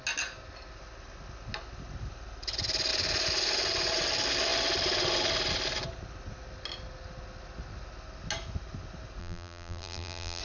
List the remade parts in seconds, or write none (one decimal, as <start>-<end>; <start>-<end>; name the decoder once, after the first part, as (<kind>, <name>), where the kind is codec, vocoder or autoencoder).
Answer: 9.2-10.4 (vocoder, BigVGAN v2)